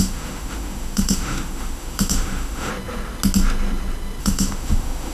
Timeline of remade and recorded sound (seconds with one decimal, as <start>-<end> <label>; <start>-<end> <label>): 0.0-2.7 remade; 2.7-4.2 recorded; 4.2-5.1 remade